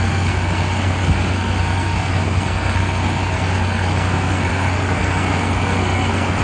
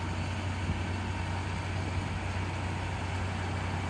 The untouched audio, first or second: second